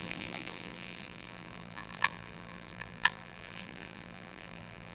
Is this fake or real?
fake